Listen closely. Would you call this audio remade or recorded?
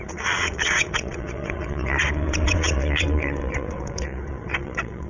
remade